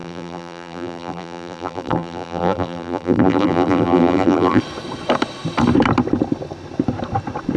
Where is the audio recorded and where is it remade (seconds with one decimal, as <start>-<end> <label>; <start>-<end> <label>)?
0.0-4.6 remade; 4.6-7.6 recorded